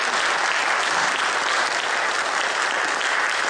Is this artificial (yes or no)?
no